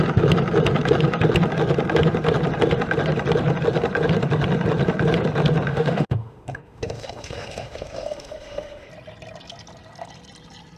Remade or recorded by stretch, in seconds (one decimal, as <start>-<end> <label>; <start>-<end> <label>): 0.0-5.7 recorded; 5.7-8.9 remade; 8.9-10.8 recorded